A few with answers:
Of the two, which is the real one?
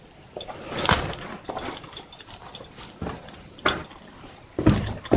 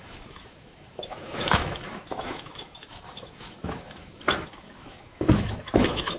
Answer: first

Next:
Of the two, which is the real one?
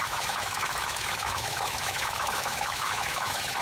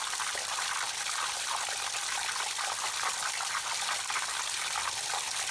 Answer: second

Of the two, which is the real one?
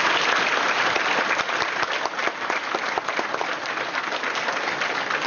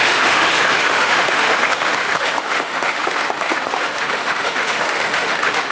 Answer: first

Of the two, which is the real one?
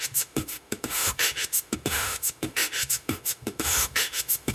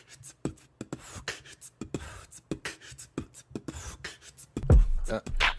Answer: second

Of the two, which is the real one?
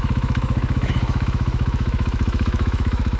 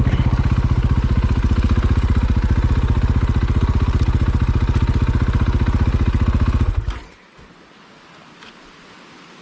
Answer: second